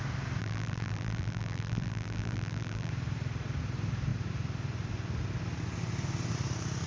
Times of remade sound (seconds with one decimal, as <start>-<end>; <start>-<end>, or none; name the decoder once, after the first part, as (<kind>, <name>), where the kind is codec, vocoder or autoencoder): 0.4-2.9 (vocoder, BigVGAN v2)